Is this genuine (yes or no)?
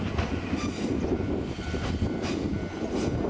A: yes